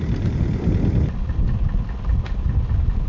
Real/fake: real